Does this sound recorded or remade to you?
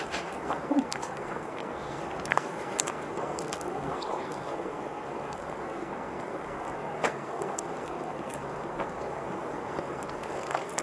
remade